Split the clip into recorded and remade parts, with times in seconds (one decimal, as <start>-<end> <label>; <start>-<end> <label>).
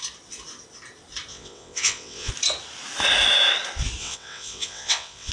0.0-1.3 recorded; 1.3-2.3 remade; 2.3-4.0 recorded; 4.0-5.3 remade